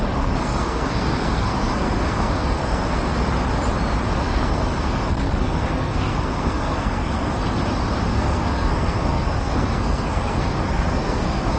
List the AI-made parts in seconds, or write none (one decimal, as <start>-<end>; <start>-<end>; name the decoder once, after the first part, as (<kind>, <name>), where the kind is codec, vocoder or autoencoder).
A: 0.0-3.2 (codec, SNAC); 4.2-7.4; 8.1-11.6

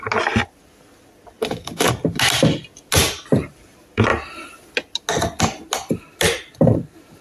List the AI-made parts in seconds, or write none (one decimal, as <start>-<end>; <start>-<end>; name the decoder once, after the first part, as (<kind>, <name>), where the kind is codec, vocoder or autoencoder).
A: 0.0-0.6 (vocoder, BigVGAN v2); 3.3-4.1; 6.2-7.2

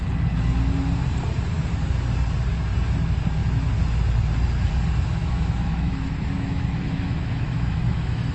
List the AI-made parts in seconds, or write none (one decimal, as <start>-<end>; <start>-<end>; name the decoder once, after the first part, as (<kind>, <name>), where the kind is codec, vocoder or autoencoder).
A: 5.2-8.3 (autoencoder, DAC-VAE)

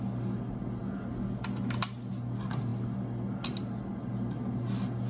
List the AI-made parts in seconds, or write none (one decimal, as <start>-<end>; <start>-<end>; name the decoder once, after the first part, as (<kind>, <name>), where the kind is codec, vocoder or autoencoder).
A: none

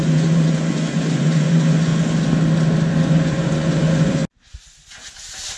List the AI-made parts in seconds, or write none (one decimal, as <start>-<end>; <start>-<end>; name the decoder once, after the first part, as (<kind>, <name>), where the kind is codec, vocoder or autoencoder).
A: 0.0-1.9 (vocoder, Vocos); 2.9-4.2

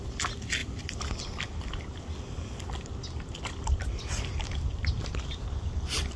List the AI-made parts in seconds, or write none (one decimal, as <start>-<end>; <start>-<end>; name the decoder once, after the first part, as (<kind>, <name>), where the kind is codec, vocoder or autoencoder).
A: none

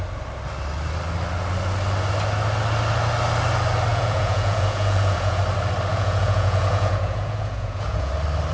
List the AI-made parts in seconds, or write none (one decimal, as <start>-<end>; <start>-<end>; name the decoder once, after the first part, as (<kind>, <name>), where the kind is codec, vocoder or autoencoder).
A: 3.9-5.4 (vocoder, Vocos); 5.9-8.1